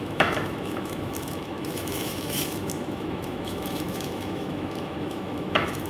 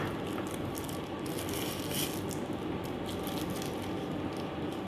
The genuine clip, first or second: second